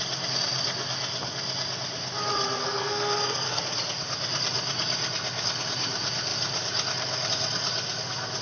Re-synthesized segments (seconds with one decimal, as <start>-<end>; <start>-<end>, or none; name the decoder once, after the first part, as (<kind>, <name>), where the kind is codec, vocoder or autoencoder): 2.6-3.6 (codec, SNAC)

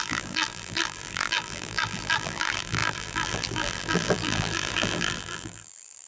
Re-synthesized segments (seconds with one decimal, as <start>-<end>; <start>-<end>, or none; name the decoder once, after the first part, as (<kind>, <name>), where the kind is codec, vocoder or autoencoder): 0.0-6.1 (vocoder, BigVGAN v2)